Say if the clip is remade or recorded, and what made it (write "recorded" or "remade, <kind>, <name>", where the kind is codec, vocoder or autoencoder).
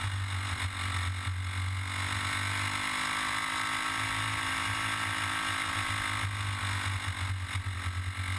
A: recorded